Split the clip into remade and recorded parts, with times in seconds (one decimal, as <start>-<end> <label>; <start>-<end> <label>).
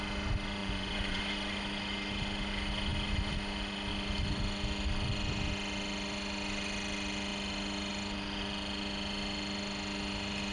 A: 0.0-0.6 recorded; 0.6-1.2 remade; 1.2-10.5 recorded